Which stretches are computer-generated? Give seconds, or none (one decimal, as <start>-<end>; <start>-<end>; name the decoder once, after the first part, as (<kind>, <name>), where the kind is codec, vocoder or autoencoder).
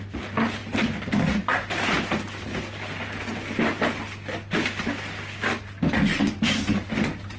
none